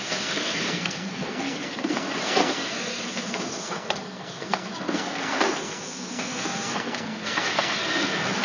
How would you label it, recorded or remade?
remade